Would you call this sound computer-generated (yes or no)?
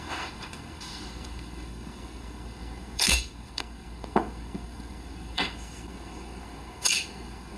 yes